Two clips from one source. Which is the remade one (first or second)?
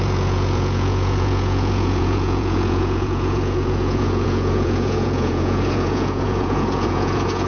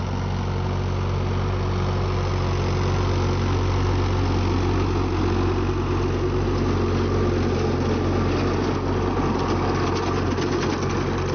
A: first